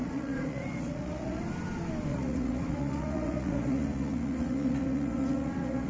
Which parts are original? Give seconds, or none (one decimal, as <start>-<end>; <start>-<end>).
1.4-2.1